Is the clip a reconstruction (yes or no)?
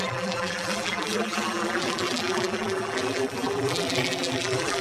yes